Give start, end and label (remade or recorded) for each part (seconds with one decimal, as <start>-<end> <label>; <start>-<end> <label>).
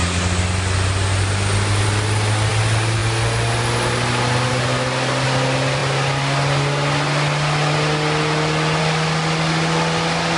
0.0-10.4 recorded